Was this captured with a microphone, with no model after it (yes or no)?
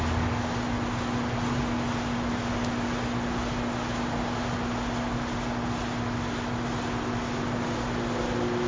yes